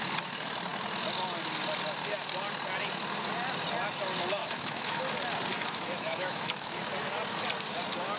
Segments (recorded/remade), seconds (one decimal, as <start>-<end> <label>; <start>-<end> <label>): 0.0-4.4 recorded; 4.4-5.0 remade; 5.0-5.5 recorded; 5.5-6.8 remade; 6.8-8.2 recorded